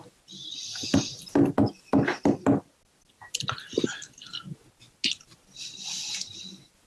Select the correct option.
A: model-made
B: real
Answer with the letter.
B